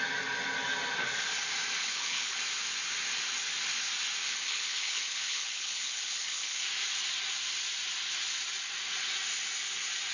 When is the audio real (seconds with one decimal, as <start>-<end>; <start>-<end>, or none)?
0.0-1.8; 2.4-4.2; 6.6-10.1